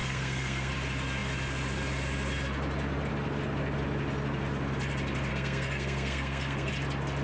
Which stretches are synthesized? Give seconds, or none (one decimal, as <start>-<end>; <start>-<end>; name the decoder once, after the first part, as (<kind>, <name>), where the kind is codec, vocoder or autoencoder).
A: 0.0-0.7 (codec, SNAC); 5.3-6.7